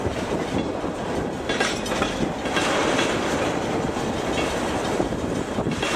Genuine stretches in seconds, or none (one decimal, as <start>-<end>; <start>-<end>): 0.0-2.8

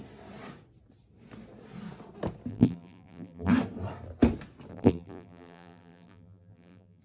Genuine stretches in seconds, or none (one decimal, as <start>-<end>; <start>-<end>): 0.0-2.5; 3.5-4.7

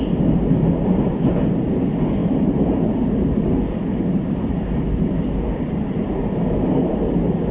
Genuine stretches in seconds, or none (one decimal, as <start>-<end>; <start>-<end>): 0.0-2.2; 2.8-4.1; 6.2-7.5